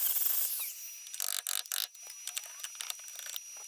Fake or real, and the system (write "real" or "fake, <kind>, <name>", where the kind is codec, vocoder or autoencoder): real